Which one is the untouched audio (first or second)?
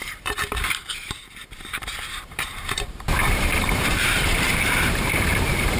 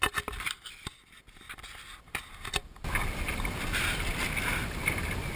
second